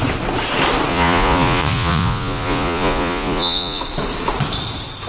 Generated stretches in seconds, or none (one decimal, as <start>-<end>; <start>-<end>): 0.9-3.8